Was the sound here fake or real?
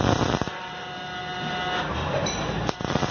real